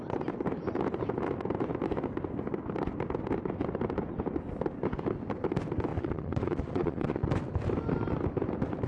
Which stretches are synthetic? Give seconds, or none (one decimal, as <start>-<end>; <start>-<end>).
5.9-7.3